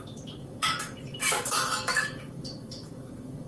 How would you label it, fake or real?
fake